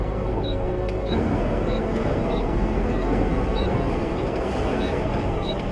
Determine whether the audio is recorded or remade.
remade